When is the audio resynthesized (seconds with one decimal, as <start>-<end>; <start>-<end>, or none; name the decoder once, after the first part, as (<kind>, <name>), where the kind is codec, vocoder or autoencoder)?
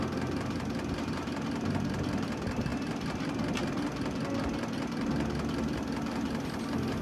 none